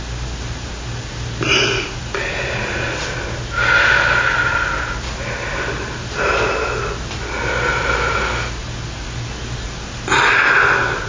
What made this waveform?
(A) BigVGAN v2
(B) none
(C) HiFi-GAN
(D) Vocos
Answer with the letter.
B